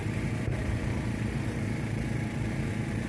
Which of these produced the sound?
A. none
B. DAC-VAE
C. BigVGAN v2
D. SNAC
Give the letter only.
C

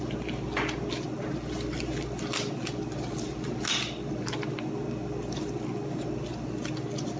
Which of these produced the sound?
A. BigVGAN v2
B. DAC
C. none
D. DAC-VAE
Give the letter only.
C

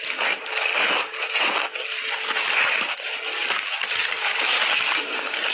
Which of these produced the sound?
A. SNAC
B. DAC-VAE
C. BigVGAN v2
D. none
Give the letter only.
D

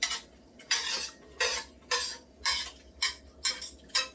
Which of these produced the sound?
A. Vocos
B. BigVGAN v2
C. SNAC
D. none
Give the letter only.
D